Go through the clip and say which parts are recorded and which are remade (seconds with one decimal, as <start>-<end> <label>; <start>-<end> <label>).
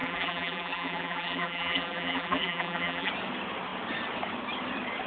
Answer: 0.0-3.1 remade; 3.1-5.1 recorded